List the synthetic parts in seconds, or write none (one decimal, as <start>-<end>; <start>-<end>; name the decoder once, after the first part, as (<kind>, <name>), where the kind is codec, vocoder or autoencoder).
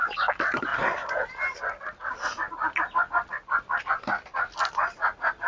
none